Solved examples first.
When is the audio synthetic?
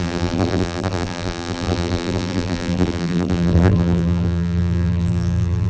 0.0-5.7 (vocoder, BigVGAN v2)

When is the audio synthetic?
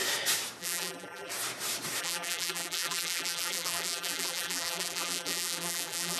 0.6-1.3 (vocoder, BigVGAN v2); 2.0-6.2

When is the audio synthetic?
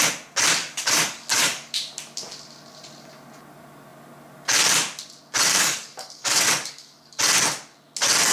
0.6-1.7 (codec, DAC); 5.5-7.2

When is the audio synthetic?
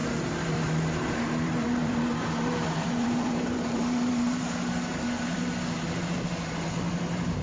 0.0-4.4 (vocoder, BigVGAN v2)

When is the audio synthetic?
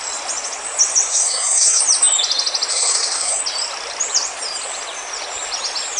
1.1-1.8 (codec, SNAC); 2.7-3.4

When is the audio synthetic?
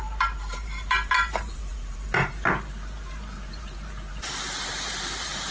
0.0-5.5 (vocoder, BigVGAN v2)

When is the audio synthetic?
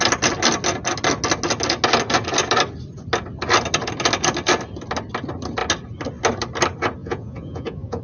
7.0-8.0 (vocoder, Vocos)